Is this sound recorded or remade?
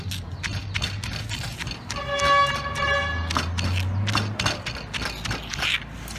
recorded